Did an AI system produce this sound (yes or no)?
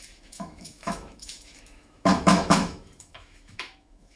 yes